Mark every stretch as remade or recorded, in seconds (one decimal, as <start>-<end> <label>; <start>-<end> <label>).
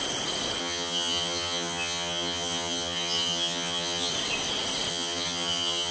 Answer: 0.0-0.6 recorded; 0.6-4.1 remade; 4.1-4.9 recorded; 4.9-5.9 remade